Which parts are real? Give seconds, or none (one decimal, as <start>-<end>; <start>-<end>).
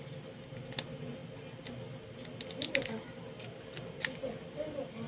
0.0-5.1